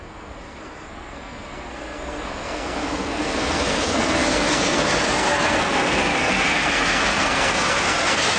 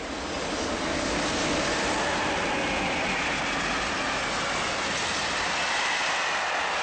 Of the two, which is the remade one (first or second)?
first